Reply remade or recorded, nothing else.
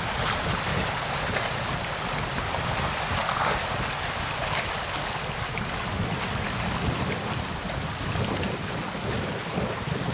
recorded